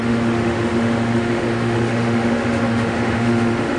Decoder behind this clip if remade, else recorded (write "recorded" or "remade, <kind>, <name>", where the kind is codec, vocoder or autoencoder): remade, autoencoder, DAC-VAE